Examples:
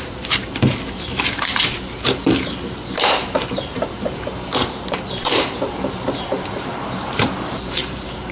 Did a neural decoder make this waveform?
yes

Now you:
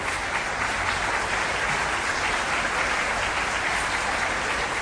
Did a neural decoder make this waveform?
no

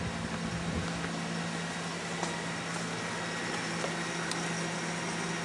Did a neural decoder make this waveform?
no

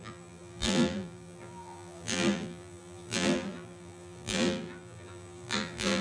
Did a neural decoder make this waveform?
yes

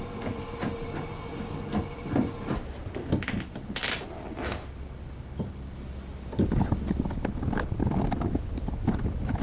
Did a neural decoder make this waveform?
no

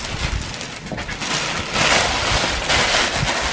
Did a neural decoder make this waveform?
no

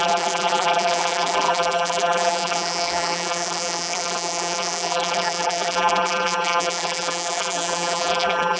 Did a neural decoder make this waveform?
yes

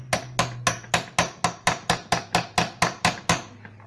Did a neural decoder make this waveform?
no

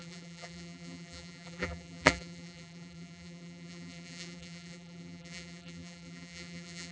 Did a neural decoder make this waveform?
yes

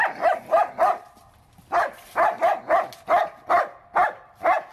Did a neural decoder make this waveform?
yes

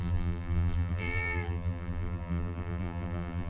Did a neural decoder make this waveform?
yes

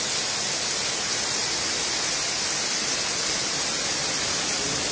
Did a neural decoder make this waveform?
no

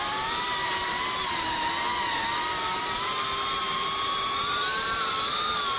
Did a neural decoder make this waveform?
no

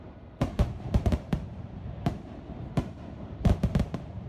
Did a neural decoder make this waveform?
yes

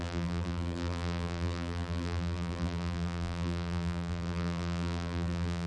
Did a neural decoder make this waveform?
yes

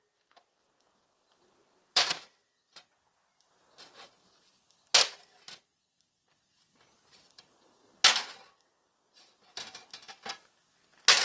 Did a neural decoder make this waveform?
no